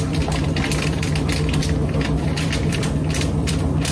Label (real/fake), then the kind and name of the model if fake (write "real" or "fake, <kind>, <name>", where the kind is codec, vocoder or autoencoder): fake, vocoder, BigVGAN v2